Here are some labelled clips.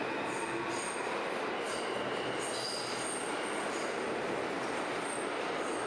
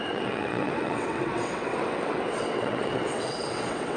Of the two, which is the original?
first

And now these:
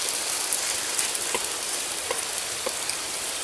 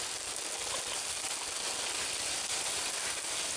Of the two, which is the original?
second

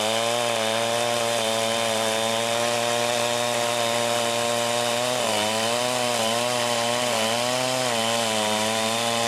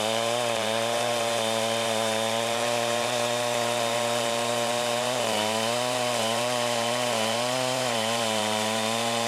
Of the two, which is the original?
first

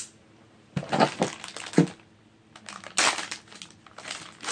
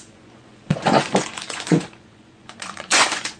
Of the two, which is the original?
first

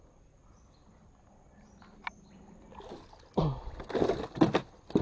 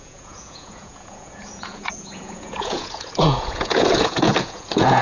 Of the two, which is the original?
first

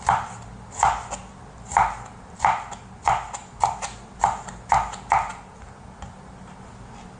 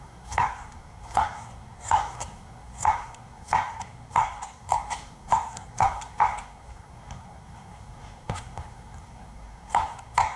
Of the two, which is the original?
first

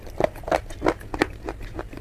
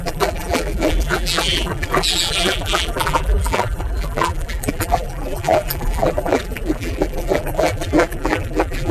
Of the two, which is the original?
first